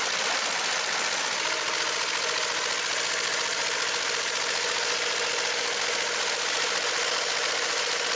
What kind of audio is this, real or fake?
real